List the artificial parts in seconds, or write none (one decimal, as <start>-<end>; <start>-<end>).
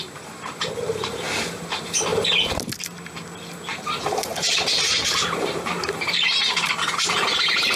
0.0-2.1; 3.7-7.8